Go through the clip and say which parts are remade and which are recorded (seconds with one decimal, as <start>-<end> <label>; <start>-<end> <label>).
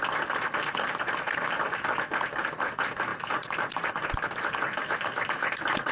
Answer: 0.0-3.1 recorded; 3.1-3.9 remade; 3.9-5.9 recorded